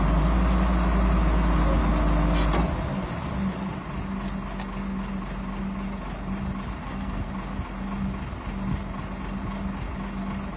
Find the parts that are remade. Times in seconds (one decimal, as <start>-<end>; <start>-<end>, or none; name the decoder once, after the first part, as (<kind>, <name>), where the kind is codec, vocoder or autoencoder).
6.8-7.3 (codec, SNAC)

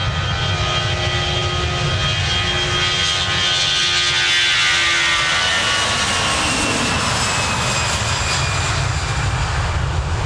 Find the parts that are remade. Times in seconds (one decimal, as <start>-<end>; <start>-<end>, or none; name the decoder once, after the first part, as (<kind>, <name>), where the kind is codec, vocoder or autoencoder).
none

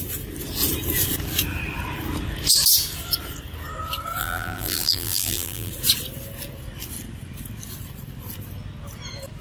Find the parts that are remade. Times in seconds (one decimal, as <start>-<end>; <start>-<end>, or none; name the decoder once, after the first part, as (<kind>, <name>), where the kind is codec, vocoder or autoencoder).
4.2-5.7 (vocoder, BigVGAN v2)

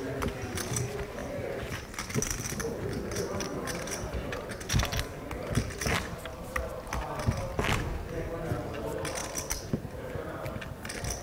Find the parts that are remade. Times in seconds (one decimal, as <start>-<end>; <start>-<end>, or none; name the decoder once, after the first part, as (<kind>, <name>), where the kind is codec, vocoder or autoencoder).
1.2-1.8 (vocoder, BigVGAN v2); 3.5-4.6

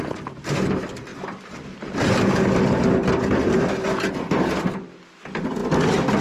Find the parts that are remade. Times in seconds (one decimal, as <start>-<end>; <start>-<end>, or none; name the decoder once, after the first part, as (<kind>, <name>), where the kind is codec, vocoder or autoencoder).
1.1-4.7 (vocoder, BigVGAN v2); 5.6-6.2

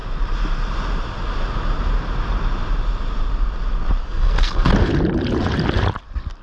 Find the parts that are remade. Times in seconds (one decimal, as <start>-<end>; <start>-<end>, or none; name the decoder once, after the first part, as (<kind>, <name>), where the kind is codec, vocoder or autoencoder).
4.0-4.7 (codec, SNAC)

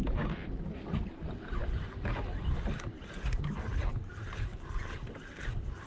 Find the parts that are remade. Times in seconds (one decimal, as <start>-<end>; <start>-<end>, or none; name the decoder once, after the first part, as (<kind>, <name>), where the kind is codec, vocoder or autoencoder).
none